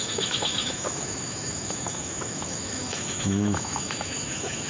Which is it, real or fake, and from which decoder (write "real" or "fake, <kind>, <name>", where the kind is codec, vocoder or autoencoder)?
fake, autoencoder, DAC-VAE